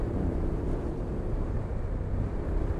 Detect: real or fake real